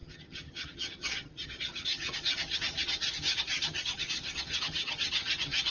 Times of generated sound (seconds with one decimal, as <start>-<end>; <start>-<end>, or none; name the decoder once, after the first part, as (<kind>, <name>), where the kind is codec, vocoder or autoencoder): 0.0-5.7 (vocoder, HiFi-GAN)